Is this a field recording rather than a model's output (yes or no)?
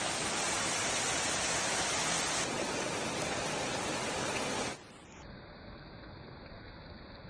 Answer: yes